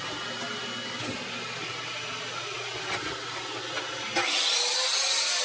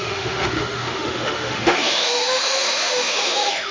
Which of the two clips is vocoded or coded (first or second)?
second